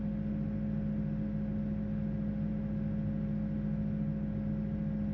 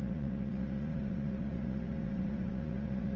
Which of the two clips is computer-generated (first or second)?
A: second